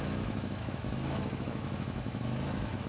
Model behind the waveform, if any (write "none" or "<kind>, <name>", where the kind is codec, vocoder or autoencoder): autoencoder, DAC-VAE